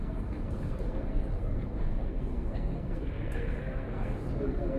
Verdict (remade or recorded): remade